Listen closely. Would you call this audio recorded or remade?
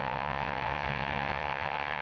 remade